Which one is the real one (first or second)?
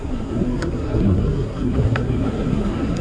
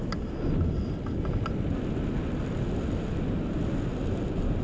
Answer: second